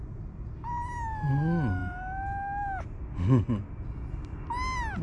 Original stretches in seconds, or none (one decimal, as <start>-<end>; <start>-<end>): 0.0-5.0